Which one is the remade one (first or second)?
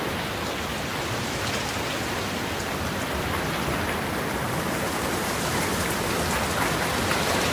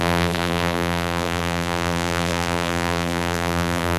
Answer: second